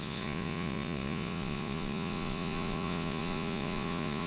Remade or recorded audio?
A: remade